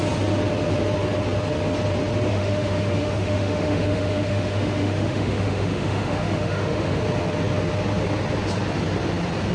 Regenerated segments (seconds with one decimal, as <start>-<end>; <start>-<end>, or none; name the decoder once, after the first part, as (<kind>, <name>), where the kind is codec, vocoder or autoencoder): 2.3-7.0 (autoencoder, DAC-VAE)